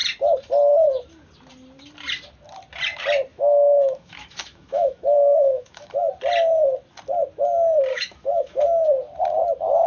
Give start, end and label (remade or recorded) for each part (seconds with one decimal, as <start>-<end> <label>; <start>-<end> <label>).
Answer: 0.0-3.3 recorded; 3.3-6.1 remade; 6.1-7.9 recorded; 7.9-8.6 remade; 8.6-9.9 recorded